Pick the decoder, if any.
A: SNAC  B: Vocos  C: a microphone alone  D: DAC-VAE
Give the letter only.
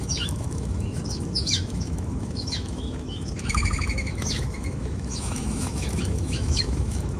D